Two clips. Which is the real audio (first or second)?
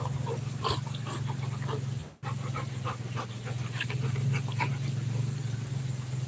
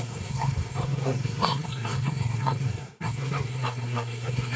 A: first